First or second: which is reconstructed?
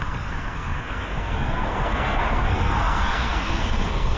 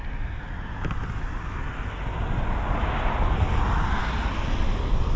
first